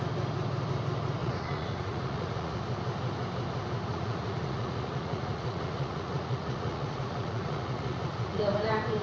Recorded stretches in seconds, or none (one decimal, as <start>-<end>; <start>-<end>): 0.0-1.2; 2.6-3.9; 8.4-9.0